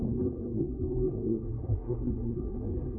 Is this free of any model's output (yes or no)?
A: no